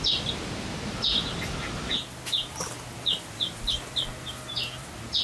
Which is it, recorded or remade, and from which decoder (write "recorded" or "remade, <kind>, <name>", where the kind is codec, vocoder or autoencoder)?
recorded